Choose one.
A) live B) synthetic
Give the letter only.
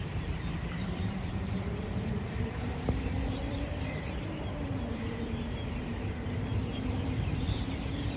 B